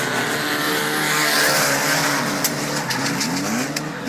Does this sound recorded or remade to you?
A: recorded